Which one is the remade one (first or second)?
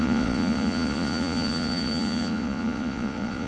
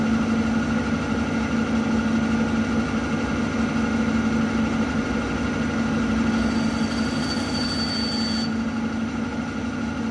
first